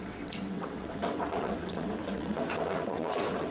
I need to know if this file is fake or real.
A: fake